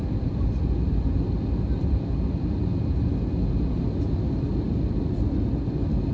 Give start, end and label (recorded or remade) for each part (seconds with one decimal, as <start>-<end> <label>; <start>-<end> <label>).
0.0-2.7 remade; 2.7-3.6 recorded; 3.6-6.1 remade